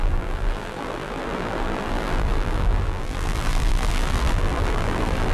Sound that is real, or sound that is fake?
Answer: fake